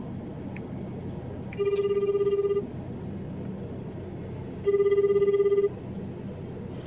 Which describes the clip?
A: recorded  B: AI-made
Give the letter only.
A